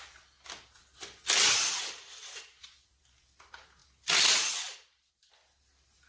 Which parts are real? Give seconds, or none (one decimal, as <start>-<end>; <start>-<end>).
0.0-6.1